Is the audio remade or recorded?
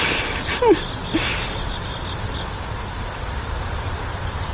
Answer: recorded